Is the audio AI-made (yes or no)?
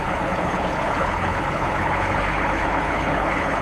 yes